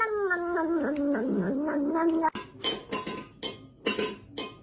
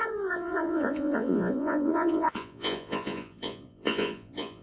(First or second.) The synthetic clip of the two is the second